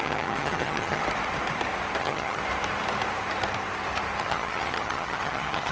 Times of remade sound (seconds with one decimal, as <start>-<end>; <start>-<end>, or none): 0.0-1.0; 2.0-2.4; 4.2-5.7